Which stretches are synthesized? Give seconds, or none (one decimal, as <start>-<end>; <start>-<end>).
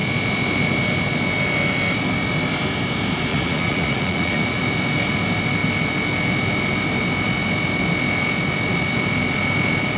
3.3-4.6